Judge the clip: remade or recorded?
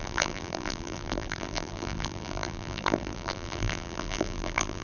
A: remade